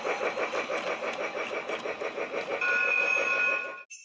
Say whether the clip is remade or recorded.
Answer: recorded